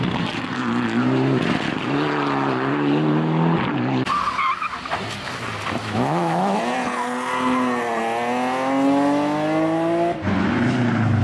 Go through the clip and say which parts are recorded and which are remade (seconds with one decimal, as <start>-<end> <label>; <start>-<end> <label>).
0.0-5.8 recorded; 5.8-6.6 remade; 6.6-11.2 recorded